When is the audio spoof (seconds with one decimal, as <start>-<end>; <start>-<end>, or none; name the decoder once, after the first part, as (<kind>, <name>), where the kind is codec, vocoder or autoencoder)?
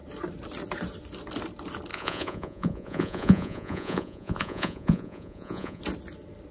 1.9-5.8 (vocoder, Vocos)